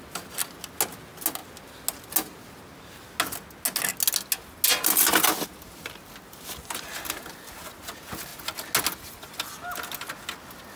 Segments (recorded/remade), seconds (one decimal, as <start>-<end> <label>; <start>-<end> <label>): 0.0-10.8 recorded